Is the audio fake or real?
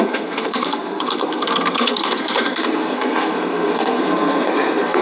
fake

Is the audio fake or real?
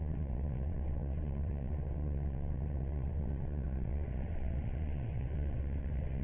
fake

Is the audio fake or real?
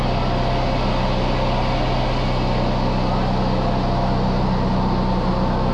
real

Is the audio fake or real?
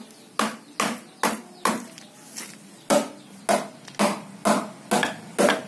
real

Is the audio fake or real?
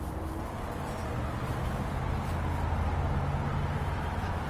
real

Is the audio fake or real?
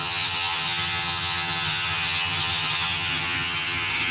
fake